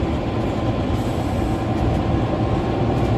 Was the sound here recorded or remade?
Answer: recorded